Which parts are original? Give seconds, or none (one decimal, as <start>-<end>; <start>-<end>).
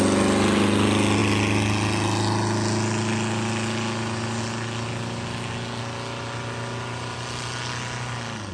0.0-8.5